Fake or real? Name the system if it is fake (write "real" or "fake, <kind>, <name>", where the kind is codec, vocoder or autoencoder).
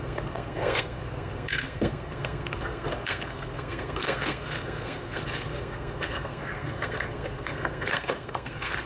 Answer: fake, codec, SNAC